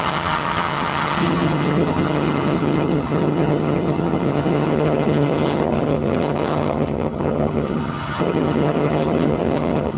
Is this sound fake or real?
fake